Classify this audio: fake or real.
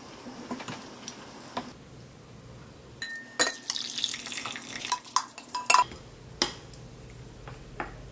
real